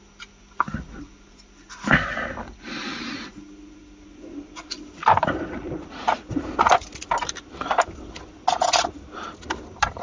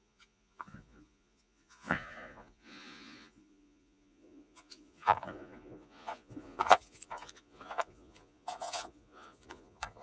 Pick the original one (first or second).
first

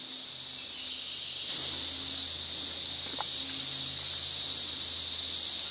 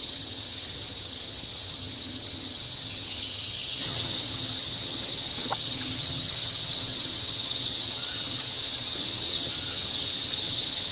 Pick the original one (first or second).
first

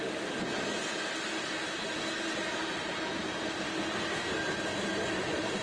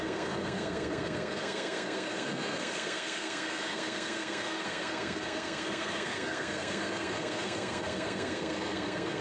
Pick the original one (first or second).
first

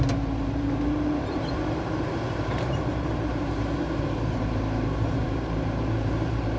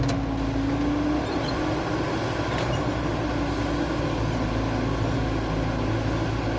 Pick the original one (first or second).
second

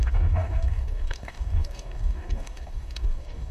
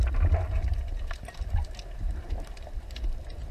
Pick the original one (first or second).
second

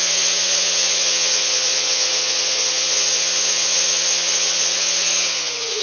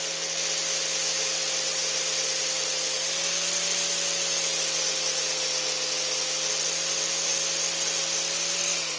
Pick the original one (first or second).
second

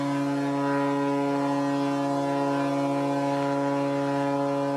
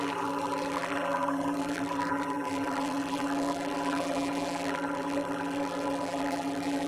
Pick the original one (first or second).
first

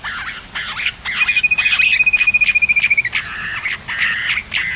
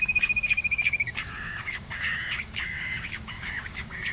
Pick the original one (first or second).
first